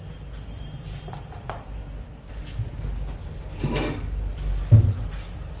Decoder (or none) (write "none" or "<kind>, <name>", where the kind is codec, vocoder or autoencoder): none